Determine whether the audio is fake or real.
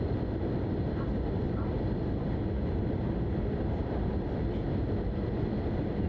real